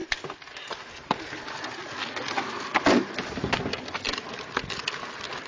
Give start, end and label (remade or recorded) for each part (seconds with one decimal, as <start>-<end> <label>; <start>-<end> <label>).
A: 0.0-5.5 recorded